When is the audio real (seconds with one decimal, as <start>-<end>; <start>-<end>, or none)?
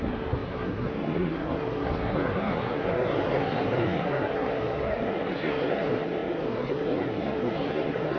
none